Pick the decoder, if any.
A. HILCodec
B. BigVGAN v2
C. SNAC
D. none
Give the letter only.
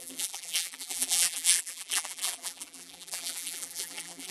B